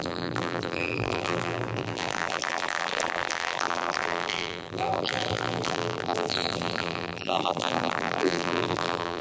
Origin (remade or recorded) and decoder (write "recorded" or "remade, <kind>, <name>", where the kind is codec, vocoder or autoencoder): remade, vocoder, BigVGAN v2